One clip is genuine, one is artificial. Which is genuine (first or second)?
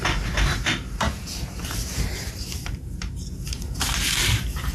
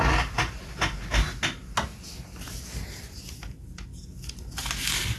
second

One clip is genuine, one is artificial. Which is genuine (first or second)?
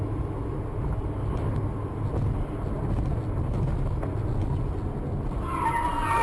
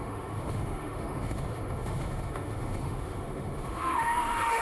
first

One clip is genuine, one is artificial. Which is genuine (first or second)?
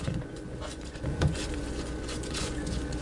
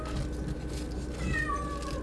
second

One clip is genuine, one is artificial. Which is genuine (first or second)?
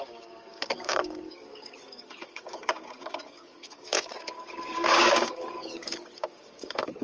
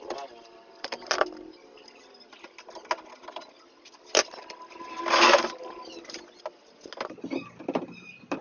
second